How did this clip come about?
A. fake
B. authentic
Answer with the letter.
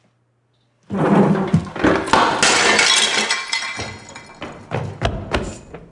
B